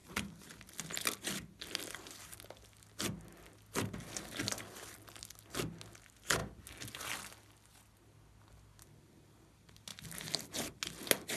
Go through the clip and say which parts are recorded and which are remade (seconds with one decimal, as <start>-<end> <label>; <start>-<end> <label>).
0.0-0.6 remade; 0.6-9.9 recorded; 9.9-10.7 remade; 10.7-11.4 recorded